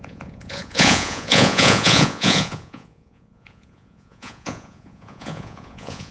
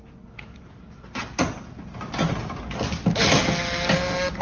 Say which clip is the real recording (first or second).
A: second